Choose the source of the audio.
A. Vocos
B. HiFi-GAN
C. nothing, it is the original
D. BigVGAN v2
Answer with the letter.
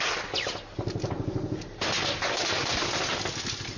C